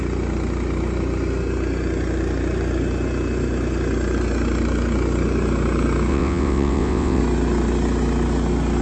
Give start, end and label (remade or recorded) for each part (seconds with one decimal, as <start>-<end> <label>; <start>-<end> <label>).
0.0-6.1 recorded; 6.1-7.2 remade; 7.2-8.8 recorded